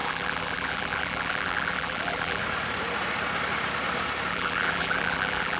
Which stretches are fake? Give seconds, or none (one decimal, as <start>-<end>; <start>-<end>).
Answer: 0.0-2.4; 4.3-5.6